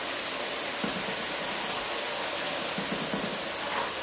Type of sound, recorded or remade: recorded